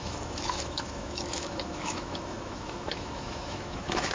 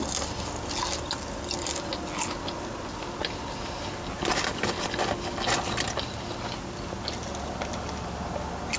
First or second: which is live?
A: second